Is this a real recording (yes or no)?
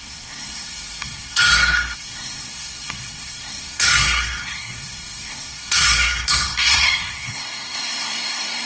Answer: no